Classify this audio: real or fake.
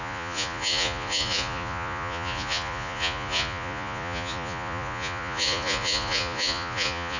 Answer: fake